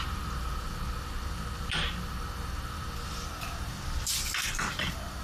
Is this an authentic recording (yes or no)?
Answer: yes